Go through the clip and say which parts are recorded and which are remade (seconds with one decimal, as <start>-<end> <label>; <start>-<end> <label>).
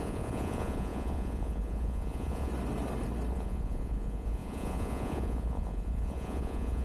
0.0-2.5 remade; 2.5-3.3 recorded; 3.3-6.8 remade